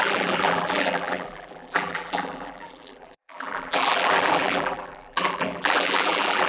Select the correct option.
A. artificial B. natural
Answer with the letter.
A